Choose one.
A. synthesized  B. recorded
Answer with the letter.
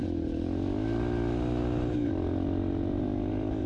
B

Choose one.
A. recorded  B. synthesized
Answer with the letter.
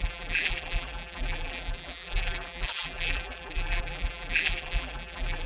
B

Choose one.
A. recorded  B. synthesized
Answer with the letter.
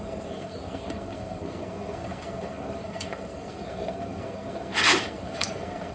B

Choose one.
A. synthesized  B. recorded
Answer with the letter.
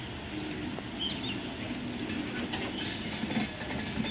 B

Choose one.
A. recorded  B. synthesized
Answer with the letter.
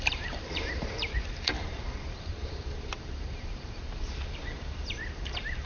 B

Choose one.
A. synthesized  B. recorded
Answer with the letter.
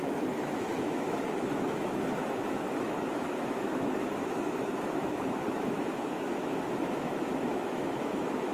A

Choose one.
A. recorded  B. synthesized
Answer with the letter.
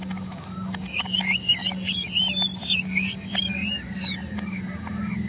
A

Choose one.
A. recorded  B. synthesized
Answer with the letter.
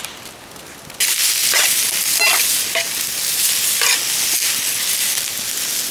A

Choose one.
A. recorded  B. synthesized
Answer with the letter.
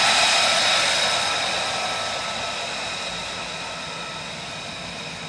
A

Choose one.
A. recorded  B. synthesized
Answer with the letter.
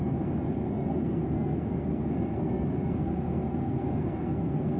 B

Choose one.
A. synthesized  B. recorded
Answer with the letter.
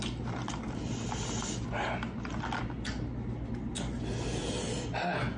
B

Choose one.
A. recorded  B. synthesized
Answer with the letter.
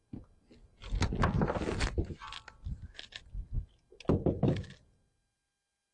A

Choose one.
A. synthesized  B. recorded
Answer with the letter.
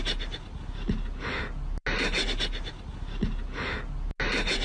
B